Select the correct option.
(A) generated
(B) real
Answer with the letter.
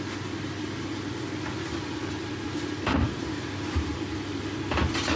B